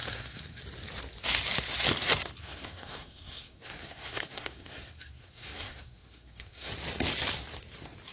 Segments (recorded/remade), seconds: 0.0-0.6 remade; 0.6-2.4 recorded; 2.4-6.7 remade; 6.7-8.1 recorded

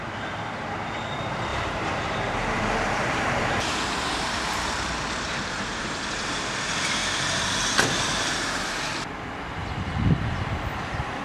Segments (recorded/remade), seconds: 0.0-1.5 recorded; 1.5-5.8 remade; 5.8-7.0 recorded; 7.0-8.6 remade; 8.6-11.2 recorded

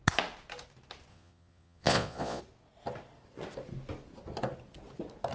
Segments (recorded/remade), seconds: 0.0-1.1 recorded; 1.1-2.4 remade; 2.4-5.3 recorded

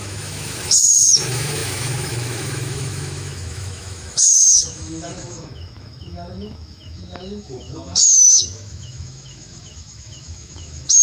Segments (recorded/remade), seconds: 0.0-11.0 remade

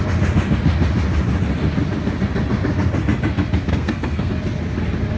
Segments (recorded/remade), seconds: 0.0-3.7 recorded; 3.7-4.3 remade; 4.3-5.2 recorded

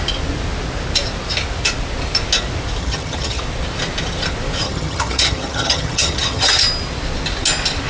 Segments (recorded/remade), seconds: 0.0-2.8 recorded; 2.8-3.4 remade; 3.4-4.6 recorded; 4.6-6.5 remade; 6.5-7.9 recorded

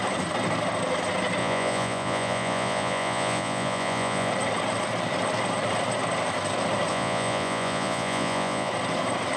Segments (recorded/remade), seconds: 0.0-1.4 recorded; 1.4-4.3 remade; 4.3-6.9 recorded; 6.9-8.7 remade; 8.7-9.4 recorded